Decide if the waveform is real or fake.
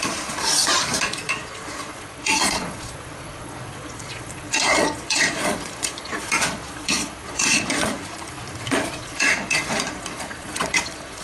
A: fake